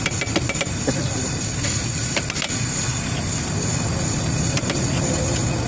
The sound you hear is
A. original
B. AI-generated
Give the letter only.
A